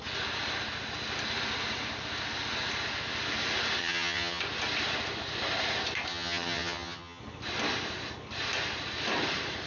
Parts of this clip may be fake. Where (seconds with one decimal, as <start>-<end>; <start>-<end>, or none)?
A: 3.8-4.4; 6.1-7.2